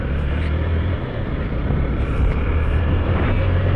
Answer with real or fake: fake